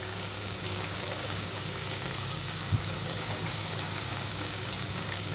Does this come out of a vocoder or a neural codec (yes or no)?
yes